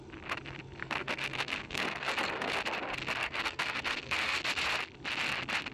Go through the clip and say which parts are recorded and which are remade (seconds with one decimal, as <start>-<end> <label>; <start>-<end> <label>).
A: 0.0-0.8 recorded; 0.8-2.5 remade; 2.5-3.2 recorded; 3.2-4.4 remade; 4.4-5.7 recorded